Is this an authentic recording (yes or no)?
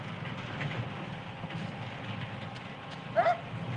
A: yes